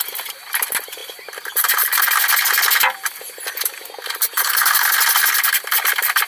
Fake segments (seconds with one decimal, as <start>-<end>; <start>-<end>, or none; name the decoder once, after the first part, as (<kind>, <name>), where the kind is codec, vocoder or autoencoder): none